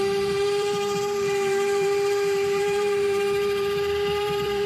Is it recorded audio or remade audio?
remade